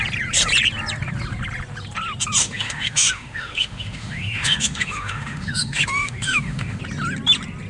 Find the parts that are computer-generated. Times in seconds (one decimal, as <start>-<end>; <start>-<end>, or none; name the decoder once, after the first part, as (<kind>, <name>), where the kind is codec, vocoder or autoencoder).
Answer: 2.4-6.8 (autoencoder, DAC-VAE)